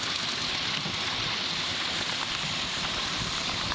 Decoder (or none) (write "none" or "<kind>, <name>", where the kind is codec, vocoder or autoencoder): none